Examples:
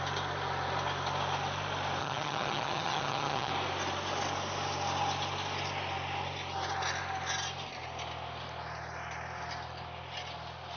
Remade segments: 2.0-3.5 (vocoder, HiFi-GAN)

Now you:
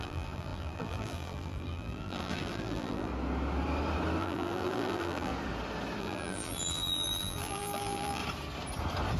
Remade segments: 0.0-3.1 (vocoder, BigVGAN v2); 4.2-5.3; 6.0-8.2

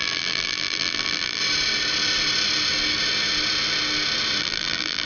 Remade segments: 0.0-1.4 (vocoder, BigVGAN v2); 4.4-5.1

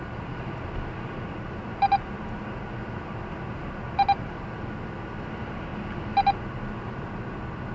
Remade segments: none

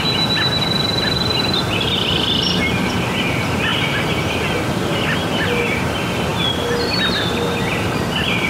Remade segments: none

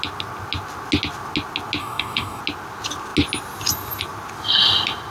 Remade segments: 1.8-2.4 (codec, DAC)

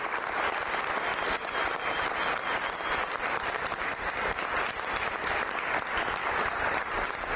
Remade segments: 3.0-4.4 (vocoder, BigVGAN v2); 6.2-6.8

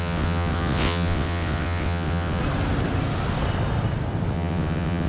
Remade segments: 0.0-2.4 (vocoder, WaveNeXt); 4.3-5.1